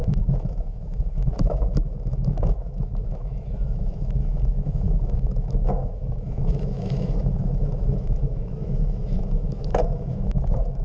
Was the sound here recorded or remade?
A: remade